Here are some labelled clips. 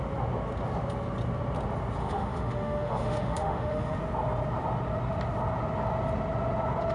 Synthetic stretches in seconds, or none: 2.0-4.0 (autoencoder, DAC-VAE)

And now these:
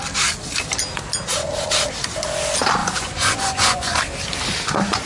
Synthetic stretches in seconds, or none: 2.8-4.0 (vocoder, Vocos)

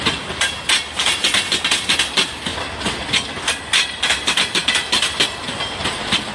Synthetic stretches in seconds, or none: none

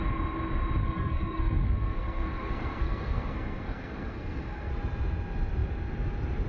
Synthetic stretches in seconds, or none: 0.8-4.7 (codec, SNAC)

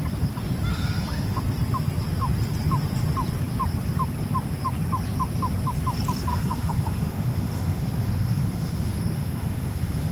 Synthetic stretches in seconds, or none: 0.7-1.4 (autoencoder, DAC-VAE); 6.3-10.1

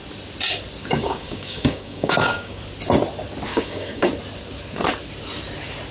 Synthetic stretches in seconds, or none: 0.8-2.6 (codec, DAC); 3.5-4.1

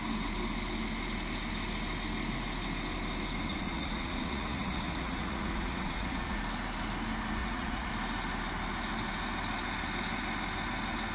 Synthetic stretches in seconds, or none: 3.5-6.4 (vocoder, Vocos); 7.4-7.9